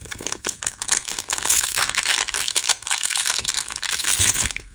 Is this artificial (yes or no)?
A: yes